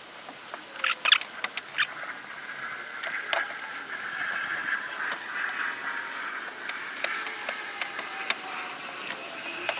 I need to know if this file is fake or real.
real